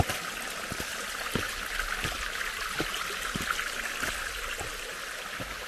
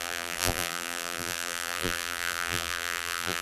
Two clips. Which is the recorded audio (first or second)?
first